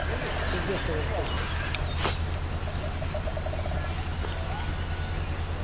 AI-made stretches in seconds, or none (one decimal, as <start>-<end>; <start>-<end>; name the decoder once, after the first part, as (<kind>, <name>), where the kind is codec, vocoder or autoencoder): none